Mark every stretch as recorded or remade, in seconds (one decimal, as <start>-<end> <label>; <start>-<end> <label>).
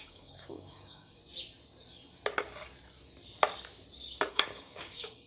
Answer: 0.0-1.2 remade; 1.2-4.3 recorded; 4.3-5.3 remade